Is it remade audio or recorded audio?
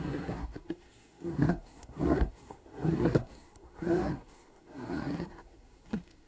remade